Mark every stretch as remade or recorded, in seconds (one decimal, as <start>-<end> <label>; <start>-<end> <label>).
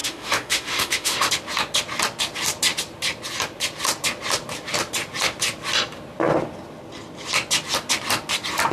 0.0-1.3 remade; 1.3-8.7 recorded